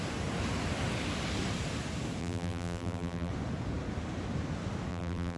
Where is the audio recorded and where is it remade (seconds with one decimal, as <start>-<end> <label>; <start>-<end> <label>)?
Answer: 0.0-2.2 recorded; 2.2-3.3 remade; 3.3-4.9 recorded; 4.9-5.4 remade